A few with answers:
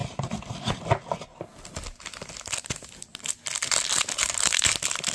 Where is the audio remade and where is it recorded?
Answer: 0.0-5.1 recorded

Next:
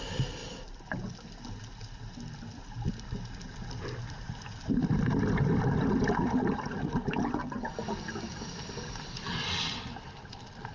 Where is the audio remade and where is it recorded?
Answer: 0.0-10.7 recorded

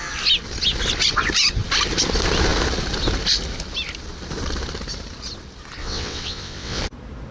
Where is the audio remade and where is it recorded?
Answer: 0.0-5.8 recorded; 5.8-6.8 remade; 6.8-7.3 recorded

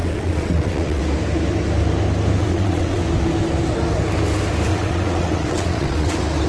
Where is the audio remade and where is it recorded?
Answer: 0.0-1.0 remade; 1.0-2.4 recorded; 2.4-3.0 remade; 3.0-4.7 recorded; 4.7-6.1 remade; 6.1-6.5 recorded

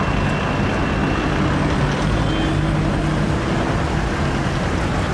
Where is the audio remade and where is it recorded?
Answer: 0.0-5.1 recorded

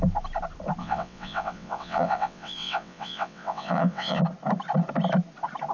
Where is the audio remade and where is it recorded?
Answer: 0.0-0.8 recorded; 0.8-4.2 remade; 4.2-5.7 recorded